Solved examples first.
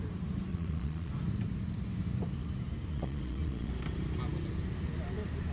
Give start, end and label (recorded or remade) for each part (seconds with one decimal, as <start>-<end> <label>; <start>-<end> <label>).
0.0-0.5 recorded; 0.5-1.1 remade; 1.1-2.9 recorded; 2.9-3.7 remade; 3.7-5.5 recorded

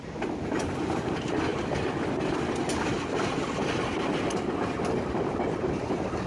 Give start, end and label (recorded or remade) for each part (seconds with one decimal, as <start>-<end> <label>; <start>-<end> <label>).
0.0-6.3 recorded

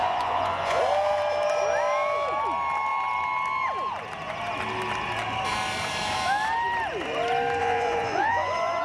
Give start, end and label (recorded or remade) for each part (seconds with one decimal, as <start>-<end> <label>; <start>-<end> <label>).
0.0-0.8 remade; 0.8-7.6 recorded; 7.6-8.8 remade

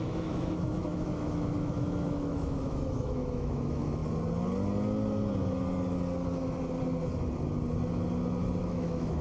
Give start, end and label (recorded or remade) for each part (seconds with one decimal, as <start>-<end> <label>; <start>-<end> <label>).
0.0-4.0 remade; 4.0-8.6 recorded; 8.6-9.2 remade

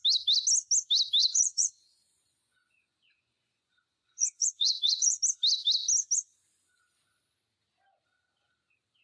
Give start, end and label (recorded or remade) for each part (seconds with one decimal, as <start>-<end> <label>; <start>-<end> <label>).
0.0-1.2 recorded; 1.2-5.2 remade; 5.2-9.0 recorded

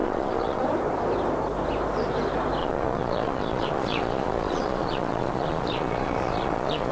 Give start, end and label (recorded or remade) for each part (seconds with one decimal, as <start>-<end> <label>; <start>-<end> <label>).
0.0-0.6 remade; 0.6-2.6 recorded; 2.6-6.9 remade

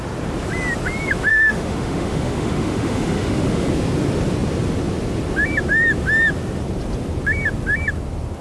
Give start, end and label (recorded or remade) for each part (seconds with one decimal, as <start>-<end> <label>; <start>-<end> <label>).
0.0-1.3 recorded; 1.3-3.7 remade; 3.7-8.4 recorded